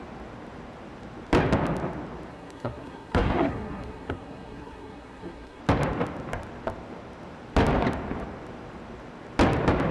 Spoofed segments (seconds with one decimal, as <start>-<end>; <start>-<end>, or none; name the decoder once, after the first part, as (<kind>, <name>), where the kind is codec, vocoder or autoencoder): 2.3-5.6 (codec, SNAC)